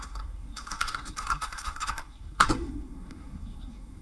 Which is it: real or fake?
fake